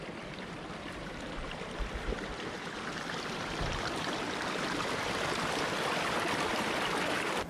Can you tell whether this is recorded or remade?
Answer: remade